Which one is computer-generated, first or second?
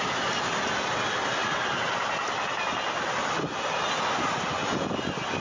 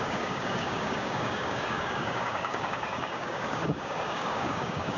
second